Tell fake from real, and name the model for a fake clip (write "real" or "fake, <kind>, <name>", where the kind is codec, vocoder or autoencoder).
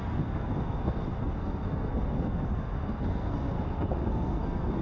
fake, codec, SNAC